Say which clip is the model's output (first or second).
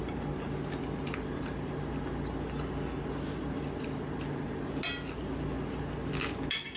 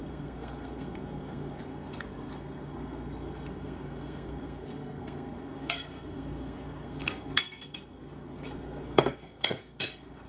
second